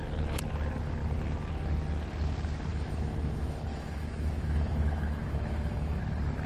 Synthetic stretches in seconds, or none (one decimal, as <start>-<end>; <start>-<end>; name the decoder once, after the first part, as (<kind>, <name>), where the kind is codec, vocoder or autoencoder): 2.7-6.0 (autoencoder, DAC-VAE)